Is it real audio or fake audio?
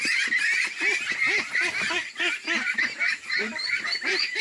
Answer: real